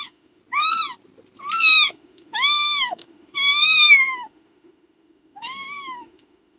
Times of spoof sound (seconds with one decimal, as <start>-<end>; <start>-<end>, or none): 0.0-0.4; 1.9-6.6